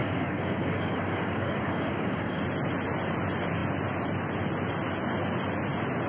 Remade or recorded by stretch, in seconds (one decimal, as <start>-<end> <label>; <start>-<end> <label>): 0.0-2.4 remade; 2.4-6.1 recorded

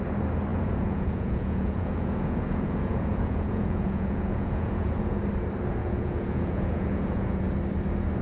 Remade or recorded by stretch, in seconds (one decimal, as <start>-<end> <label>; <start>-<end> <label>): 0.0-0.5 recorded; 0.5-5.2 remade; 5.2-5.8 recorded; 5.8-7.5 remade; 7.5-8.2 recorded

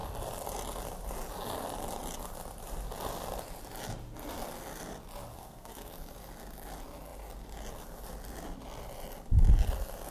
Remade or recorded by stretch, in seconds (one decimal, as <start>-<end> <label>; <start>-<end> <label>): 0.0-5.3 recorded; 5.3-5.9 remade; 5.9-10.1 recorded

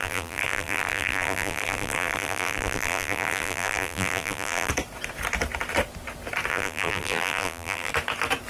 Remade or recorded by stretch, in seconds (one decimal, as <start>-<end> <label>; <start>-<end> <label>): 0.0-4.7 remade; 4.7-6.5 recorded; 6.5-7.9 remade; 7.9-8.5 recorded

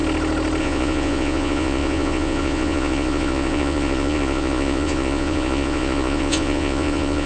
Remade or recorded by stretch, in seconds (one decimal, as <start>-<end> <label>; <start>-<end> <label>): 0.0-0.6 recorded; 0.6-7.3 remade